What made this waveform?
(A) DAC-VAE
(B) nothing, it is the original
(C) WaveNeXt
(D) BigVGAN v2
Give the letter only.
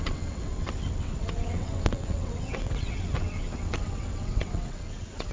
C